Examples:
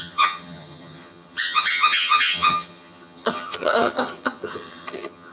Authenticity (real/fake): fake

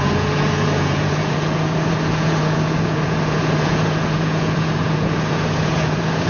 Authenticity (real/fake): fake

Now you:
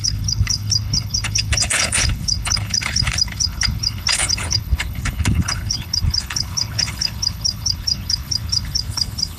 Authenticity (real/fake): fake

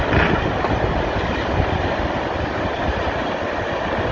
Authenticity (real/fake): real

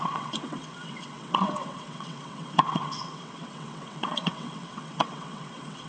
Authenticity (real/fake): fake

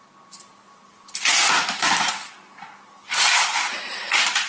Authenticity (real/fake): real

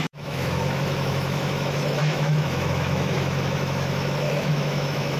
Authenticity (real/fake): fake